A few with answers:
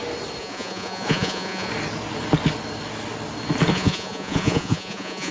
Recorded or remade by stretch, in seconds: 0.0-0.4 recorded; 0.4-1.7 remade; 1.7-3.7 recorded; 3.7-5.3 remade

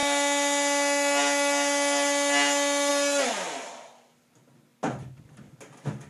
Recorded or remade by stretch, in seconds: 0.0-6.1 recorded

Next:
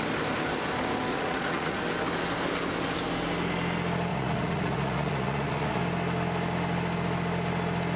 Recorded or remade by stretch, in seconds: 0.0-1.1 recorded; 1.1-1.8 remade; 1.8-4.1 recorded; 4.1-5.8 remade; 5.8-8.0 recorded

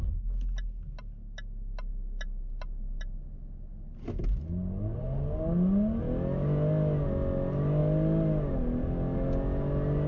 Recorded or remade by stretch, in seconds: 0.0-10.1 recorded